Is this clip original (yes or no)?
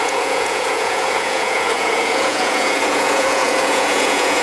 no